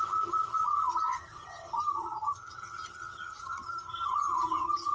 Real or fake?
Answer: fake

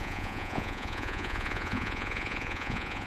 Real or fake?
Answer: fake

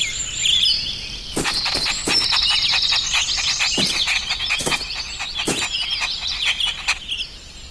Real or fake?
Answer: real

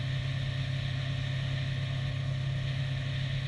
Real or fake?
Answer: real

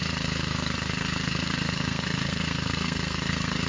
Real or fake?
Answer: fake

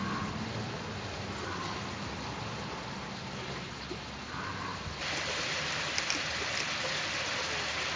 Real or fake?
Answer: real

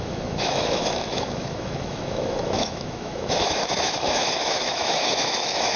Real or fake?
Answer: fake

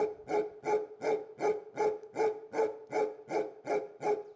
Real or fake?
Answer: real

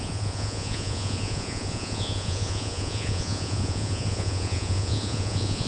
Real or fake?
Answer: fake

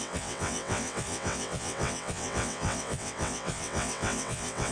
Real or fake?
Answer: fake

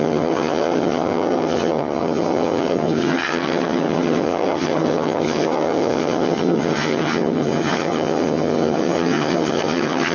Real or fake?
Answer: fake